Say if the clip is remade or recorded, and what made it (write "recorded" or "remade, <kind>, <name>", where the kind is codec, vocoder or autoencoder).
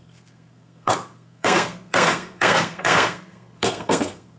remade, codec, SNAC